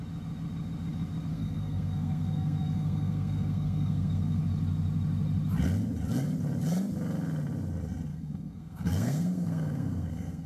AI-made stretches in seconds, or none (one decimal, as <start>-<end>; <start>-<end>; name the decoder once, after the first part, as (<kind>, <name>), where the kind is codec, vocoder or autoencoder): 1.3-4.4 (codec, SNAC); 8.1-10.5